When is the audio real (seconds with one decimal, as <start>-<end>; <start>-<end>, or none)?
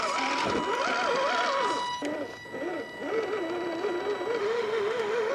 0.0-4.4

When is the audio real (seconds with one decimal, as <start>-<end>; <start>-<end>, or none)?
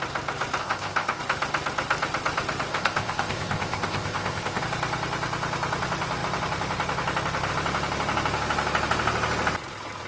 0.0-0.6; 1.2-2.7; 4.6-10.1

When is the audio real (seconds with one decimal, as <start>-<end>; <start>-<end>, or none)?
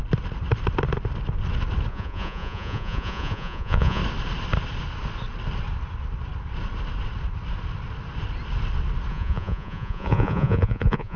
0.0-1.9; 4.0-9.1